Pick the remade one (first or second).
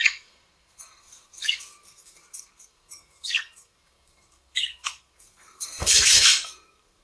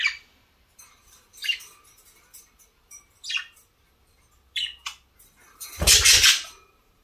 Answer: first